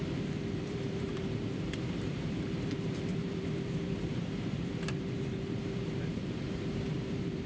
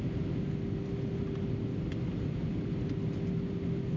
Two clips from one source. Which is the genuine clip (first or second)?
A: second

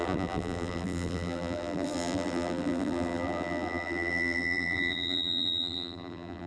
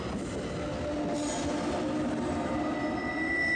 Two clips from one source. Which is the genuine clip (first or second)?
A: second